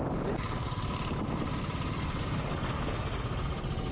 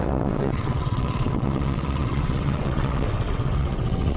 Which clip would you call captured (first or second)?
first